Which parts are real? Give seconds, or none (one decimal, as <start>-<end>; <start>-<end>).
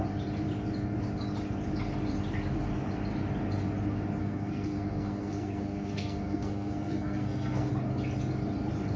0.0-4.2; 7.7-9.0